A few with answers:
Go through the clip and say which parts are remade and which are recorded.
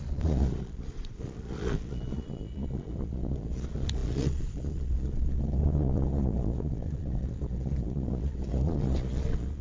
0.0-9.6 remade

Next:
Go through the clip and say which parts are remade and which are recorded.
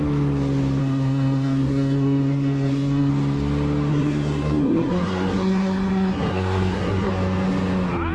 0.0-0.8 recorded; 0.8-3.1 remade; 3.1-3.9 recorded; 3.9-7.1 remade; 7.1-8.1 recorded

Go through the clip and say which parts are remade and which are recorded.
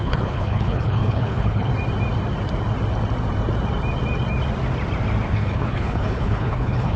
0.0-1.7 remade; 1.7-5.3 recorded; 5.3-7.0 remade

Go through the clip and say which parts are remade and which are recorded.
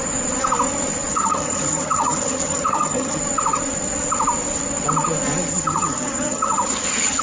0.0-1.1 recorded; 1.1-3.2 remade; 3.2-5.5 recorded; 5.5-7.2 remade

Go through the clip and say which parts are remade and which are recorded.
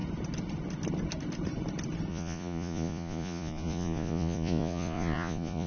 0.0-2.1 recorded; 2.1-5.7 remade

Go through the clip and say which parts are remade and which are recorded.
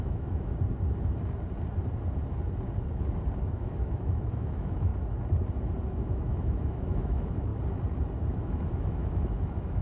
0.0-0.5 remade; 0.5-3.4 recorded; 3.4-4.9 remade; 4.9-5.9 recorded; 5.9-7.5 remade; 7.5-8.3 recorded; 8.3-9.8 remade